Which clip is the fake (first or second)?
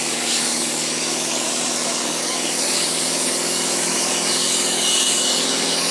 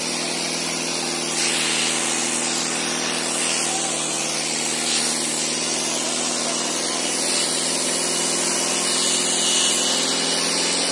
first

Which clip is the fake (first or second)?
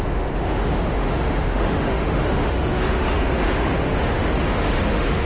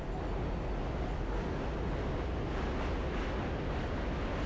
first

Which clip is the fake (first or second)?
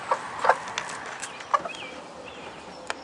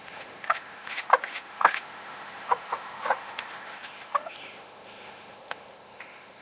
second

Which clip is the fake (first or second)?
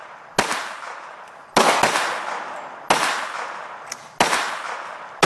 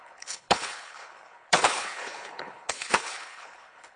second